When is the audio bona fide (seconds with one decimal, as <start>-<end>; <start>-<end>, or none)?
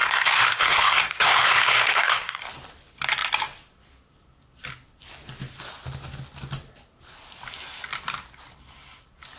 2.4-9.4